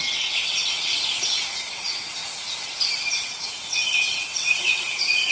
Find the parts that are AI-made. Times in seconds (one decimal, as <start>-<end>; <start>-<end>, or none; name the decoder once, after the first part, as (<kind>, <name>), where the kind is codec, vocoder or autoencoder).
0.0-0.9 (vocoder, WaveNeXt); 1.6-2.2; 3.2-5.3